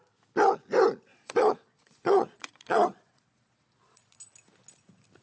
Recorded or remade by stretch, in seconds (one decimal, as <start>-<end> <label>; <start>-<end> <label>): 0.0-1.1 recorded; 1.1-4.2 remade; 4.2-5.2 recorded